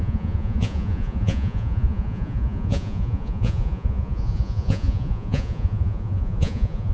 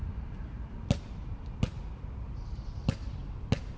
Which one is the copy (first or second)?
first